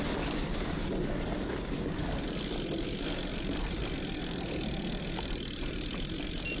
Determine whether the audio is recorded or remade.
recorded